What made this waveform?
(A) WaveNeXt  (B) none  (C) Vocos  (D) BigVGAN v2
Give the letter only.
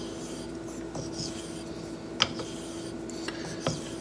B